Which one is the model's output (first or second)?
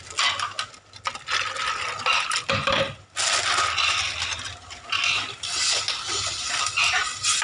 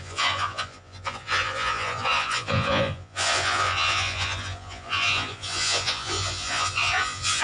second